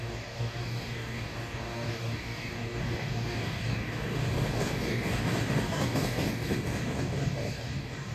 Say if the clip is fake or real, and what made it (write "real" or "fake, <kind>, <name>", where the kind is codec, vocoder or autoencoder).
fake, codec, DAC